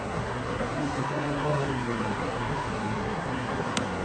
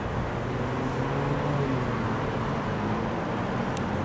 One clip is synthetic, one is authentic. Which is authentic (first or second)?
second